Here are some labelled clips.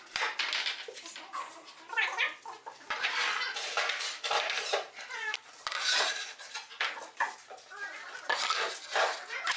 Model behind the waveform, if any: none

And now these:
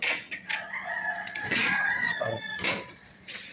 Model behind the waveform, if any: vocoder, Vocos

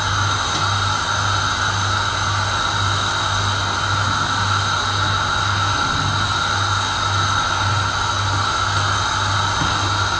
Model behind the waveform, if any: none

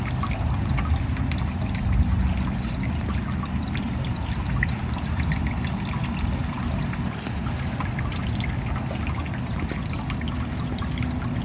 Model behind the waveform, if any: none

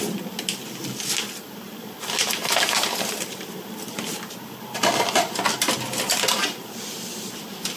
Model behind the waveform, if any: none